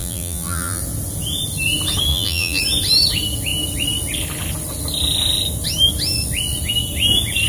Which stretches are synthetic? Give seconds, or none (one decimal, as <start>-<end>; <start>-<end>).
0.0-0.8; 2.1-2.6